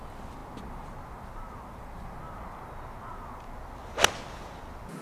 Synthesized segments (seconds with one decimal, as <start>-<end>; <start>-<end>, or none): none

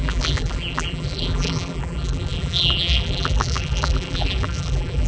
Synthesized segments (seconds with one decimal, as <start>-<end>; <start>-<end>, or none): 0.0-5.1

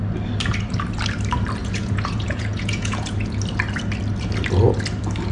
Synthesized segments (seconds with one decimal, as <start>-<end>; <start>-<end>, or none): 1.6-3.4

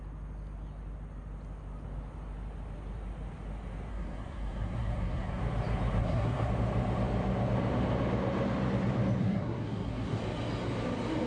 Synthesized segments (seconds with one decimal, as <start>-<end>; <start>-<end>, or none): 3.9-5.4; 6.0-6.5; 9.2-10.2

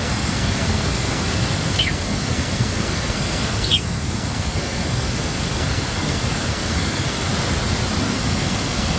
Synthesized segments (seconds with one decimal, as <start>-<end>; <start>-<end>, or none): 0.0-7.3; 8.0-9.0